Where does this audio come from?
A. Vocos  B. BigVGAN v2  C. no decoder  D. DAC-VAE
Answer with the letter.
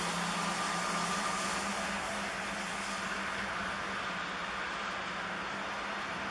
C